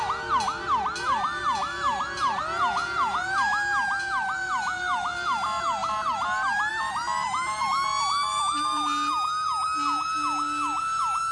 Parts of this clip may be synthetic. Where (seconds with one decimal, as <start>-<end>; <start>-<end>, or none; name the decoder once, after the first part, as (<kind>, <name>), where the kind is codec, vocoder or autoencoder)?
none